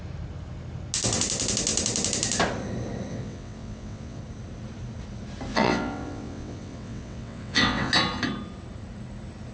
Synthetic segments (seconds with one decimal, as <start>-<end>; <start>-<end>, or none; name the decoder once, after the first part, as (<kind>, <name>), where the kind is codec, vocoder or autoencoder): 3.1-4.2 (vocoder, WaveNeXt); 5.5-7.9